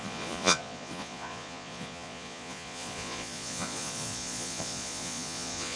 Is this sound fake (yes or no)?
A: yes